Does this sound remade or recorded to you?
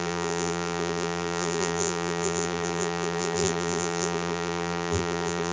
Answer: remade